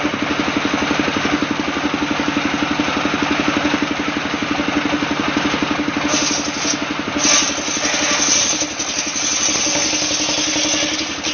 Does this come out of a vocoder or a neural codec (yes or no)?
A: no